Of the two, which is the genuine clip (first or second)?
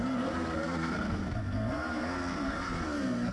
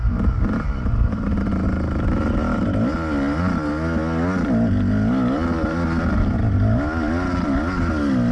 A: second